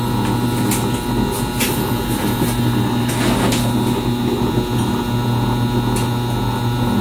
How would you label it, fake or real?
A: real